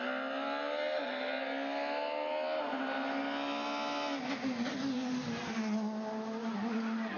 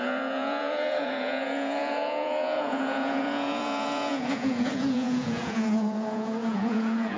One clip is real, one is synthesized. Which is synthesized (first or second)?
second